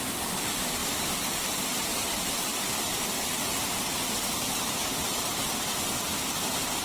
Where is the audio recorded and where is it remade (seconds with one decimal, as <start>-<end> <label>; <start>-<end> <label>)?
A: 0.0-0.8 recorded; 0.8-3.0 remade; 3.0-6.8 recorded